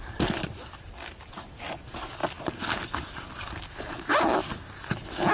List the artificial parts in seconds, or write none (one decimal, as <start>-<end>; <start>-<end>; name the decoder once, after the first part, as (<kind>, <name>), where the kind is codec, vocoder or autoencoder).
2.2-3.4 (vocoder, BigVGAN v2)